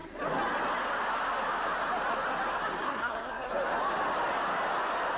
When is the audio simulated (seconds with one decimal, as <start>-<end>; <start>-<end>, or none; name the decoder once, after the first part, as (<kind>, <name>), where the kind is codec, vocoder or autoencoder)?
2.8-3.5 (codec, SNAC)

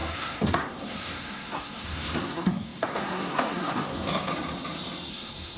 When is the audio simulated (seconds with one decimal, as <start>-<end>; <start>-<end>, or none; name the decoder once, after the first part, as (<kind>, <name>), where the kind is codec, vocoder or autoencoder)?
0.0-4.3 (codec, SNAC); 5.1-5.6

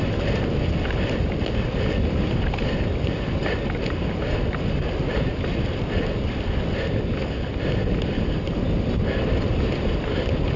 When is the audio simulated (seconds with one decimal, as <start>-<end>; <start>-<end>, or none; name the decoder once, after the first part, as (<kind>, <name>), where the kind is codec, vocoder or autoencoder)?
none

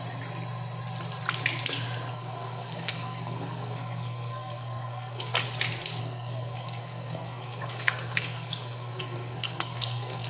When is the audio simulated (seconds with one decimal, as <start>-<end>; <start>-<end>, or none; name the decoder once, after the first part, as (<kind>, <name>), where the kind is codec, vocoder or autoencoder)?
2.1-5.3 (codec, SNAC); 6.0-10.3

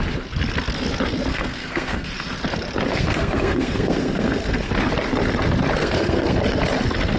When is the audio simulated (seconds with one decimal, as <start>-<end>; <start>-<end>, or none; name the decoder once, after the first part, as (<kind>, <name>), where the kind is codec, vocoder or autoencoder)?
1.3-2.1 (codec, SNAC); 2.9-4.7; 5.8-6.4

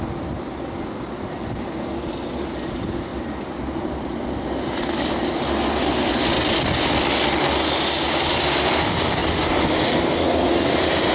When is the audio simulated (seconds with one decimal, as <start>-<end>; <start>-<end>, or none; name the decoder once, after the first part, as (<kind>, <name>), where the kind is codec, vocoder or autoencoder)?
none

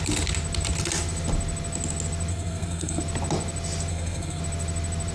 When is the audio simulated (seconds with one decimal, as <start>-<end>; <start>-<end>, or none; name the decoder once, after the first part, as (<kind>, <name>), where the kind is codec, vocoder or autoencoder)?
2.3-3.0 (codec, SNAC); 3.9-4.4